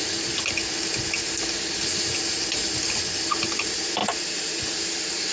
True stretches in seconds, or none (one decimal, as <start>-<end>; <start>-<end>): 0.0-5.3